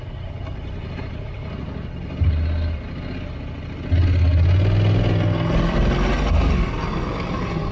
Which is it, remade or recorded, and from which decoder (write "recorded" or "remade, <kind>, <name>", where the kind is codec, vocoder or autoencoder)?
recorded